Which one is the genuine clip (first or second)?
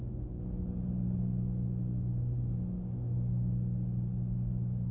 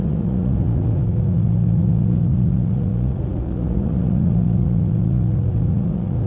first